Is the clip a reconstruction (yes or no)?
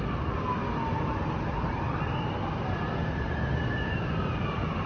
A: no